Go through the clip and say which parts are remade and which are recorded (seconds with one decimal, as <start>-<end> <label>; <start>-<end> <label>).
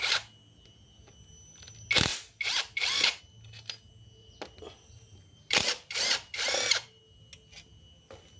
0.0-2.1 recorded; 2.1-3.2 remade; 3.2-4.2 recorded; 4.2-7.0 remade; 7.0-8.4 recorded